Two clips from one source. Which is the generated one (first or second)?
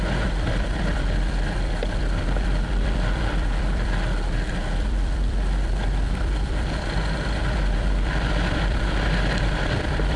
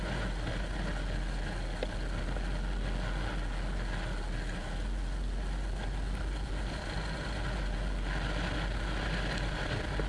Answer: first